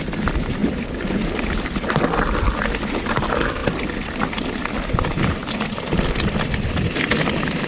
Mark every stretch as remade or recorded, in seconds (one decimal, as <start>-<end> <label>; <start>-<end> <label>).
0.0-7.7 recorded